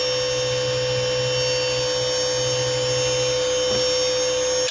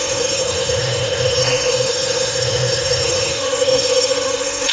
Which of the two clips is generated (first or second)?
second